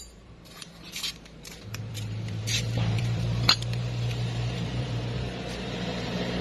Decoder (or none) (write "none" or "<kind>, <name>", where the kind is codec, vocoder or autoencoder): vocoder, BigVGAN v2